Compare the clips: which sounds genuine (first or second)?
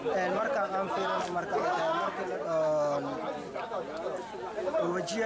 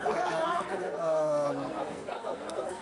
first